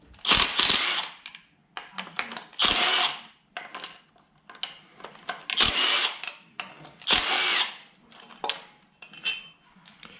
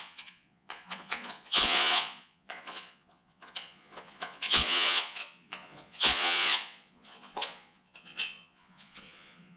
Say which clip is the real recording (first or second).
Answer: first